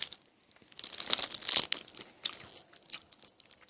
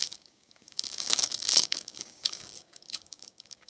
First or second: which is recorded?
first